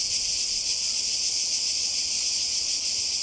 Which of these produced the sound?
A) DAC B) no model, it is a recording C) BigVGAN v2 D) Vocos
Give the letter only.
B